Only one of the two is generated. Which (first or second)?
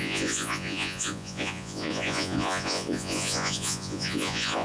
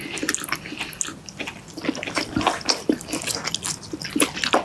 first